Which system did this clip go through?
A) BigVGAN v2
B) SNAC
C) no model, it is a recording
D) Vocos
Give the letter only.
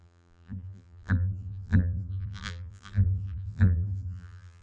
A